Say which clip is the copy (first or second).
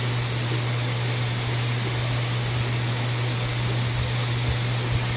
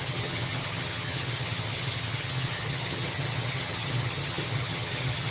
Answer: second